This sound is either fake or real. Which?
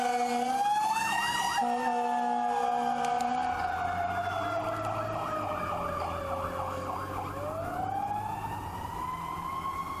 real